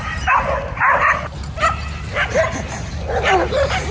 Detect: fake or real real